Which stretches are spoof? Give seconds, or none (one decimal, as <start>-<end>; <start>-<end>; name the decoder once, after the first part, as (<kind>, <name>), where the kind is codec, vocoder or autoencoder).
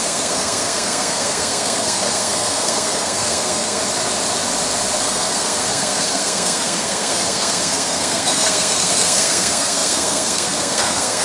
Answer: 0.0-3.8 (codec, SNAC); 5.0-11.2